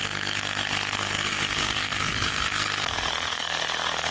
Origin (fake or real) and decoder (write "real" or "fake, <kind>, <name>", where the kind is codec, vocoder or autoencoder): fake, codec, SNAC